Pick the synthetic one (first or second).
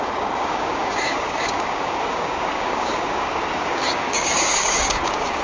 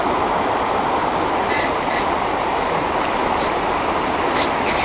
first